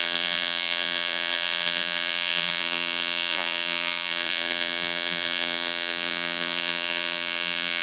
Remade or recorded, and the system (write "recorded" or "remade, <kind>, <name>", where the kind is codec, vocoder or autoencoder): remade, vocoder, BigVGAN v2